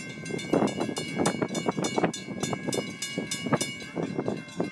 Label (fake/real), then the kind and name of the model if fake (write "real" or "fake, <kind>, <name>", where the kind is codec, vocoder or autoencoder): real